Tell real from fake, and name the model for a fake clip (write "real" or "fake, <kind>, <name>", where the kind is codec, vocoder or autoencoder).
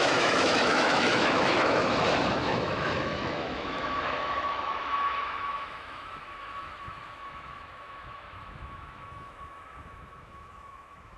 fake, autoencoder, DAC-VAE